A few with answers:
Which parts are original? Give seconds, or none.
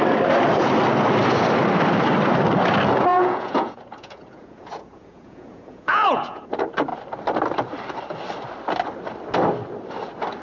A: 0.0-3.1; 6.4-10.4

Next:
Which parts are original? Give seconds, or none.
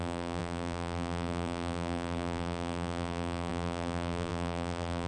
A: none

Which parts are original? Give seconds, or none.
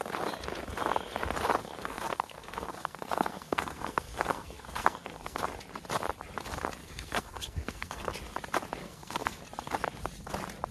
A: 0.0-1.6; 5.4-6.8; 8.1-8.8; 9.4-10.7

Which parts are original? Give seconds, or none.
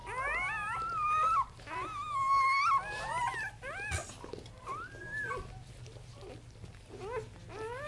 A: 0.0-7.9